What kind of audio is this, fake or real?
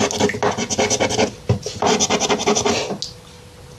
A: real